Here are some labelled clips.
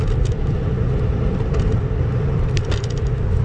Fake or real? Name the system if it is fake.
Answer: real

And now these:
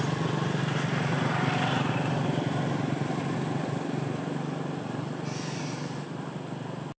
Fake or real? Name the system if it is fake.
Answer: real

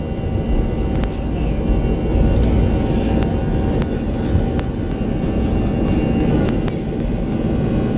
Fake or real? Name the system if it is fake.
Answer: real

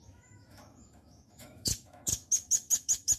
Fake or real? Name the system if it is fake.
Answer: fake, autoencoder, DAC-VAE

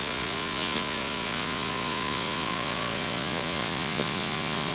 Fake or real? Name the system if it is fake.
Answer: fake, vocoder, Vocos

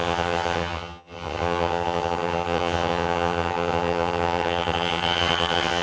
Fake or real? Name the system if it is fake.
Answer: fake, vocoder, HiFi-GAN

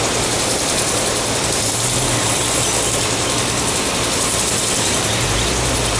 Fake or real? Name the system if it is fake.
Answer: real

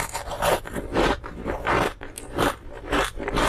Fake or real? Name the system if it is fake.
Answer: real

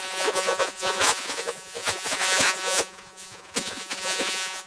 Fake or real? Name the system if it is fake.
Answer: fake, vocoder, Vocos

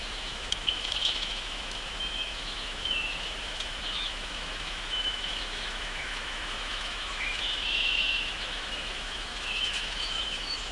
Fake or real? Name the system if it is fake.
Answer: fake, autoencoder, DAC-VAE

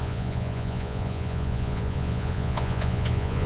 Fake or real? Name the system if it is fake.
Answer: fake, vocoder, Vocos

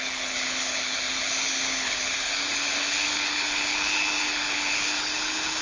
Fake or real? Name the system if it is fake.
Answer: fake, codec, HILCodec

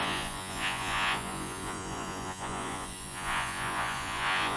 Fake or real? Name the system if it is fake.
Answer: fake, vocoder, Vocos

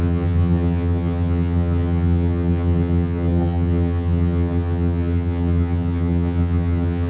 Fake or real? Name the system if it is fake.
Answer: fake, vocoder, HiFi-GAN